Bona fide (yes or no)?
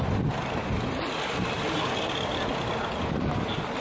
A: yes